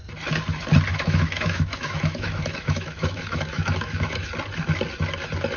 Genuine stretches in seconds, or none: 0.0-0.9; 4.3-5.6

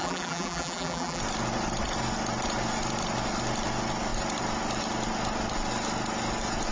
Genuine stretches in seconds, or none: 1.2-6.7

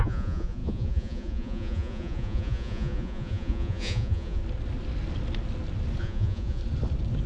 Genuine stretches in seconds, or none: 4.4-6.0; 6.6-7.3